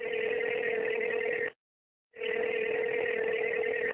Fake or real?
real